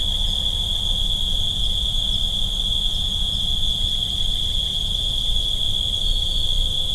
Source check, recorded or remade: recorded